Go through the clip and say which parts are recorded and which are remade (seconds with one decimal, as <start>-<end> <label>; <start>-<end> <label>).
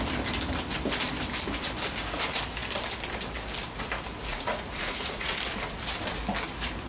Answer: 0.0-4.3 recorded; 4.3-5.4 remade; 5.4-6.9 recorded